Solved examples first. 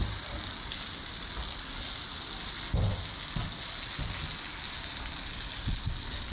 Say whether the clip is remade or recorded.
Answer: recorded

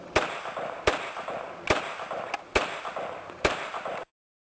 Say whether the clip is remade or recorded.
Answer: recorded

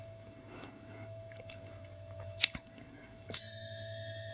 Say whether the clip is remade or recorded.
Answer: remade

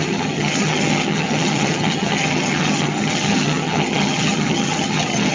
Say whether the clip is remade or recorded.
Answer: remade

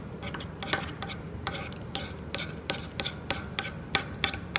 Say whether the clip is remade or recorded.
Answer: recorded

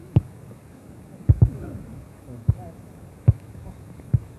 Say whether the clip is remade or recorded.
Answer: remade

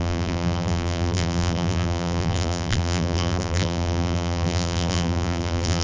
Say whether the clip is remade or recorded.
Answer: remade